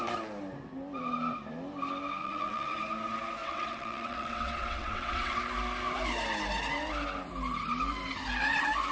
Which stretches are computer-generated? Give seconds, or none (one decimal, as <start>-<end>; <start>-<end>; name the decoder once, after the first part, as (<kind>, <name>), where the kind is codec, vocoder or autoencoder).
2.2-2.8 (vocoder, WaveNeXt); 3.4-5.4